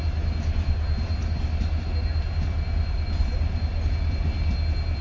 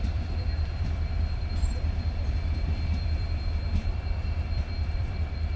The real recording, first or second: first